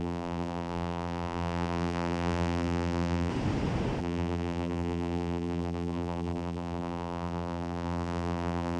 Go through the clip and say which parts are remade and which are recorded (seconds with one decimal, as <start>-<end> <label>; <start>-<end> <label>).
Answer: 0.0-3.3 remade; 3.3-4.0 recorded; 4.0-8.8 remade